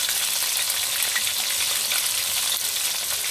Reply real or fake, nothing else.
real